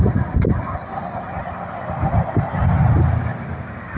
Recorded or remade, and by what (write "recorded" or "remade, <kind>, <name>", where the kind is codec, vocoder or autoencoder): recorded